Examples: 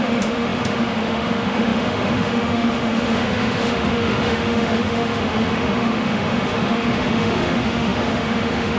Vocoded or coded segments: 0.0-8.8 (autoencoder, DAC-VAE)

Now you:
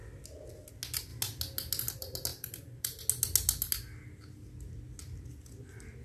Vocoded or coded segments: 2.3-3.0 (vocoder, BigVGAN v2)

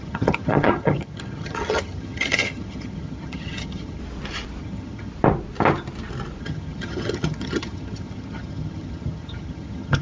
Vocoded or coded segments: 0.0-4.0 (vocoder, HiFi-GAN); 4.6-5.1; 6.4-10.0

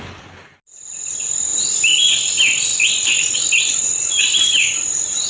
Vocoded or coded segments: none

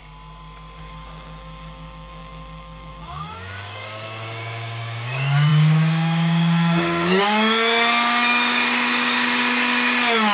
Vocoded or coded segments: 0.8-10.3 (codec, DAC)